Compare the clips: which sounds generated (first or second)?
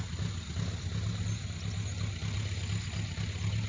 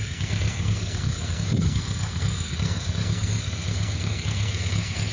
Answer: second